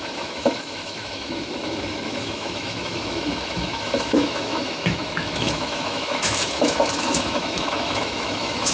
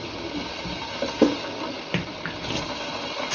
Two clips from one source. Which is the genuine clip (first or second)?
second